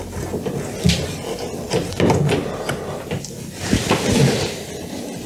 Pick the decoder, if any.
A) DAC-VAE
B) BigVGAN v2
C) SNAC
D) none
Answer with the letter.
D